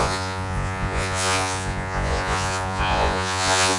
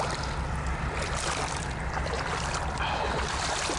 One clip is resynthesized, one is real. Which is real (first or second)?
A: second